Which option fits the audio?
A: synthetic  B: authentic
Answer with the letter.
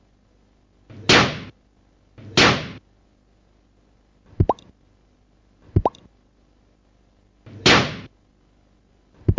B